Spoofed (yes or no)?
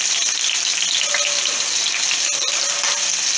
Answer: no